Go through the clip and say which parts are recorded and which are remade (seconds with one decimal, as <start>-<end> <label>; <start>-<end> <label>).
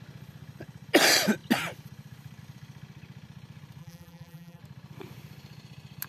0.0-3.8 recorded; 3.8-4.6 remade; 4.6-6.1 recorded